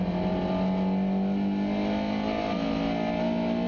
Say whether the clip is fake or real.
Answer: real